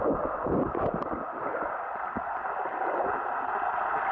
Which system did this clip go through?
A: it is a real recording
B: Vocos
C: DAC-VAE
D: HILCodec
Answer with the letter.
A